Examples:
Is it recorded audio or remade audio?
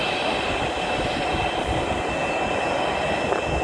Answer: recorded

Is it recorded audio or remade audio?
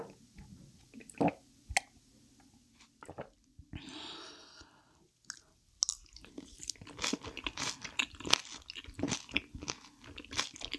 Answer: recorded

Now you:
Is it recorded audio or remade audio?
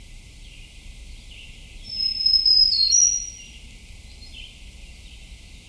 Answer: recorded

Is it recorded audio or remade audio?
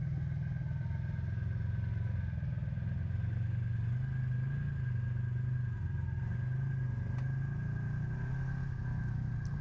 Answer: recorded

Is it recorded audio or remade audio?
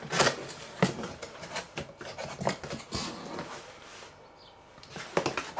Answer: recorded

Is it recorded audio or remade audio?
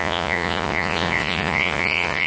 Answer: remade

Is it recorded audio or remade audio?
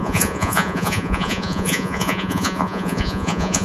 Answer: remade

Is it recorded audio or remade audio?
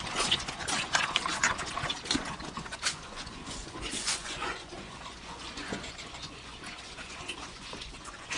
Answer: remade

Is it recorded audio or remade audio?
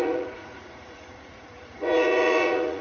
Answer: remade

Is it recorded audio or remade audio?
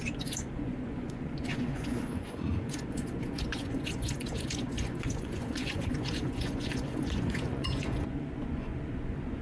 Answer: remade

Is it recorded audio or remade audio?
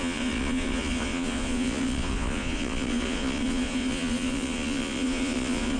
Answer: remade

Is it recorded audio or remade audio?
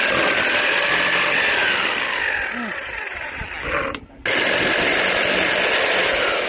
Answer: recorded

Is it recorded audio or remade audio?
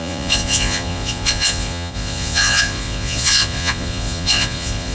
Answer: remade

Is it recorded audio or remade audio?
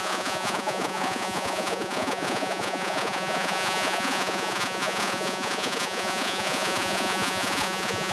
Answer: remade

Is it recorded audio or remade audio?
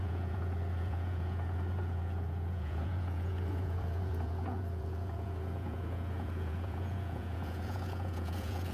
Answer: remade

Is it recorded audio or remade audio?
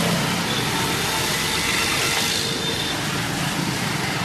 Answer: recorded